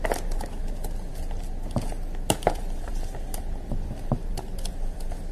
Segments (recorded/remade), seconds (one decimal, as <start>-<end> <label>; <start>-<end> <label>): 0.0-5.3 recorded